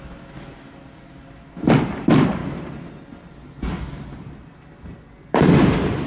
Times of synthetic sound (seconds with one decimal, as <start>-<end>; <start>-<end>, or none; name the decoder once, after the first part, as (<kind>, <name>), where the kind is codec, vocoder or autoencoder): none